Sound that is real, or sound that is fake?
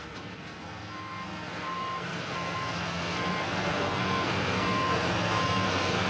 fake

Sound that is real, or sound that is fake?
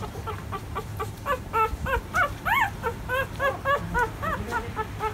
real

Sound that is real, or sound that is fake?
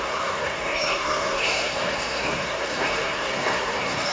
fake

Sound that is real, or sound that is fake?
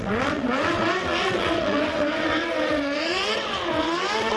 fake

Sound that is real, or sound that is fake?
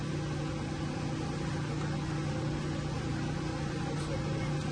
real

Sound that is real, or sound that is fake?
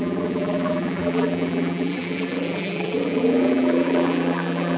fake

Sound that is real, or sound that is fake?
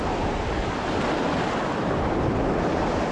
real